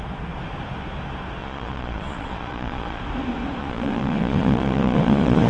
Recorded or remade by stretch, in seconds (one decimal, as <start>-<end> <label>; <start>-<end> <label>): 0.0-1.4 recorded; 1.4-3.0 remade; 3.0-3.6 recorded; 3.6-5.5 remade